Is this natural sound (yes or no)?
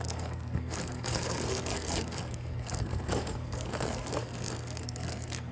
no